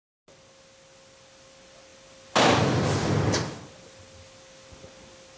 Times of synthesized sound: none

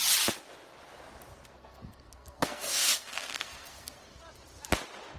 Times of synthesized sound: 1.3-4.2 (codec, SNAC)

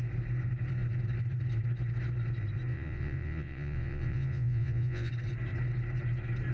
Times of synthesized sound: 2.7-5.1 (vocoder, Vocos)

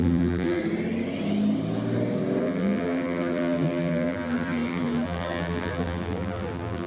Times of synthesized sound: 0.0-0.6 (vocoder, BigVGAN v2); 2.4-6.9

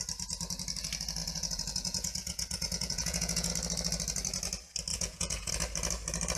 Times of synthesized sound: 1.2-3.5 (vocoder, Vocos); 4.9-5.5

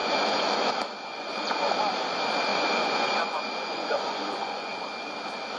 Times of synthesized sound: 0.0-0.7 (vocoder, Vocos); 1.1-1.7; 2.5-4.8

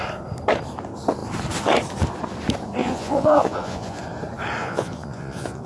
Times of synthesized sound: 2.8-4.0 (vocoder, Vocos); 4.6-5.7